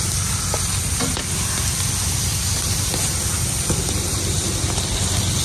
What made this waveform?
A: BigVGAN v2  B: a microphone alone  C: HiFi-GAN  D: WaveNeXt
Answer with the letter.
B